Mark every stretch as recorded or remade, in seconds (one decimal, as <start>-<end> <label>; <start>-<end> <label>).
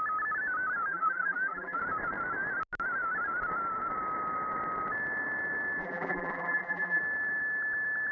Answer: 0.0-0.9 recorded; 0.9-1.8 remade; 1.8-5.8 recorded; 5.8-7.0 remade; 7.0-8.1 recorded